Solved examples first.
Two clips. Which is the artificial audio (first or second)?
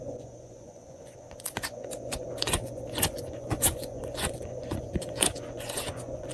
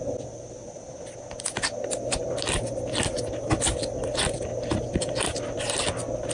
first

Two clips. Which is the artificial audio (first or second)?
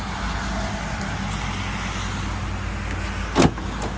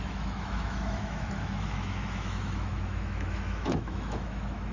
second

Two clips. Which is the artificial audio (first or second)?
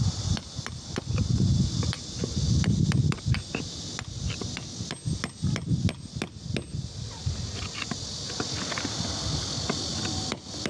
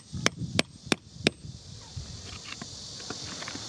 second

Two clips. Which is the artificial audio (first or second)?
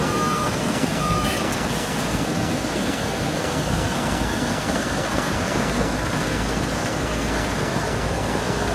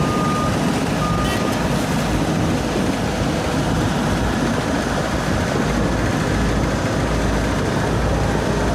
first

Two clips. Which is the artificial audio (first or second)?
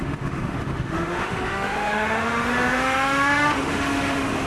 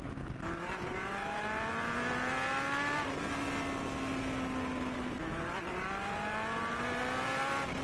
first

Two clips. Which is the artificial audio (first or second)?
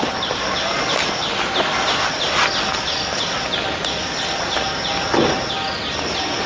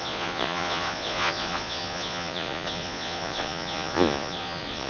second